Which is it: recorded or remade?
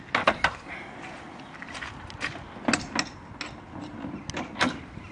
recorded